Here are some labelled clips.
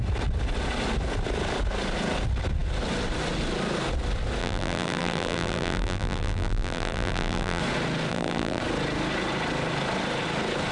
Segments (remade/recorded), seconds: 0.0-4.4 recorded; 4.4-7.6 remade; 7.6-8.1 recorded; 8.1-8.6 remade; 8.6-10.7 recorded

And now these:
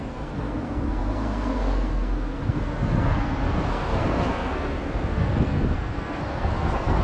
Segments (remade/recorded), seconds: 0.0-7.0 remade

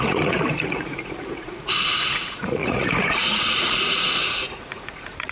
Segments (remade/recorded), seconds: 0.0-5.3 remade

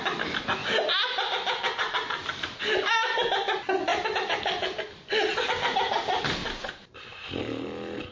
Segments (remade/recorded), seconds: 0.0-8.1 recorded

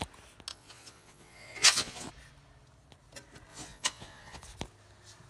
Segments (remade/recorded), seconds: 0.0-0.5 recorded; 0.5-2.1 remade; 2.1-3.5 recorded; 3.5-4.4 remade; 4.4-5.3 recorded

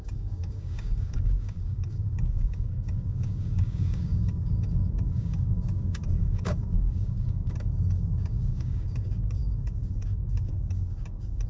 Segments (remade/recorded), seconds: 0.0-11.5 remade

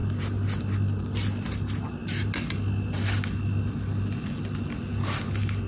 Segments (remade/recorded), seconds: 0.0-5.7 recorded

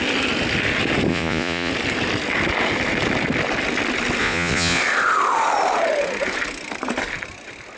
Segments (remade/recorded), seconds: 0.0-1.1 recorded; 1.1-1.7 remade; 1.7-4.2 recorded; 4.2-4.8 remade; 4.8-7.8 recorded